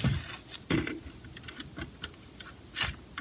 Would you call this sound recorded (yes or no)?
yes